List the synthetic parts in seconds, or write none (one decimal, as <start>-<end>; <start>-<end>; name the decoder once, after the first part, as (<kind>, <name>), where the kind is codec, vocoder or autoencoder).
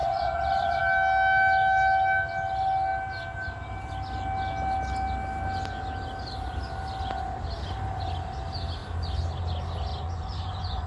0.0-0.8 (vocoder, Vocos); 9.9-10.9